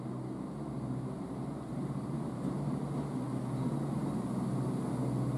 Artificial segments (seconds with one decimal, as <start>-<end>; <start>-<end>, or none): 1.4-2.8